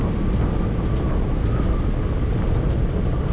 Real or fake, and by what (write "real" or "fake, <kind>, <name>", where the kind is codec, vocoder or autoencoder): real